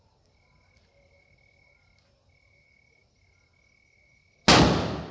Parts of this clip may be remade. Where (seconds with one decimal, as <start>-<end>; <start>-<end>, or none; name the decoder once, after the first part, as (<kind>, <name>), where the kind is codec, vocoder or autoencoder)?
none